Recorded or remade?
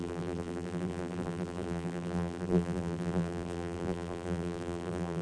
remade